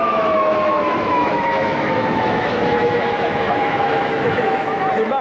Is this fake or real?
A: fake